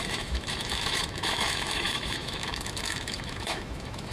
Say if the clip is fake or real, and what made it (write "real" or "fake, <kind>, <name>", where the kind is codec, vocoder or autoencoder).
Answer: fake, autoencoder, DAC-VAE